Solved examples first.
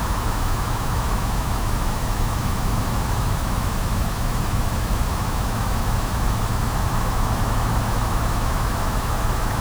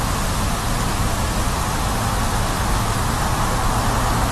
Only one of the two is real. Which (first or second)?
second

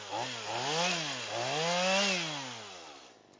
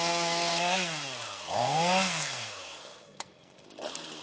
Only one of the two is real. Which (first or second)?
first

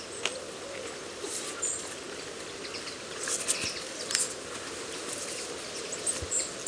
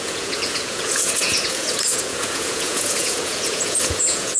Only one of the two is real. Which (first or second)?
first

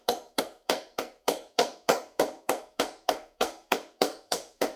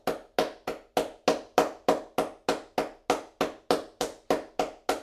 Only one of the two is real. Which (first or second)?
second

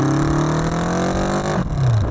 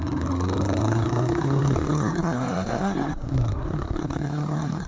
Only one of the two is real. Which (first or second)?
first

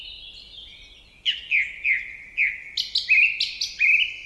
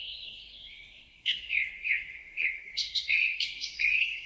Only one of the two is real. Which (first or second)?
first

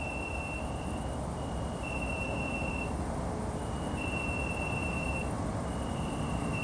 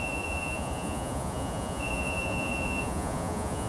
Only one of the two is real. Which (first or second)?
first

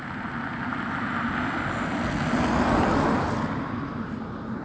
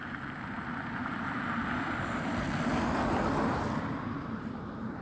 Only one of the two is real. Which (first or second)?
first